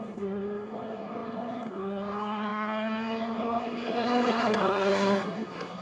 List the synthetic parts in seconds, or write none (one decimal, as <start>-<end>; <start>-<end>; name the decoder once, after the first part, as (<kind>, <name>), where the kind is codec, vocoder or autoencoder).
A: 0.0-5.8 (codec, SNAC)